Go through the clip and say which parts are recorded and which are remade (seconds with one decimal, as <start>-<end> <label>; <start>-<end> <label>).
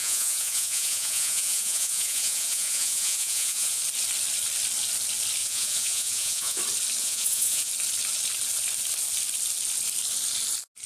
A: 0.0-3.8 remade; 3.8-5.4 recorded; 5.4-6.6 remade; 6.6-7.0 recorded; 7.0-7.7 remade; 7.7-10.9 recorded